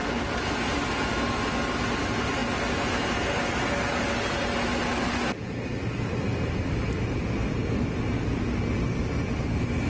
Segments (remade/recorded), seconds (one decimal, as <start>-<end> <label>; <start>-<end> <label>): 0.0-9.9 recorded